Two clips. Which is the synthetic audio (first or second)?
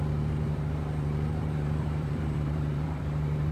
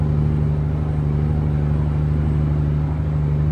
first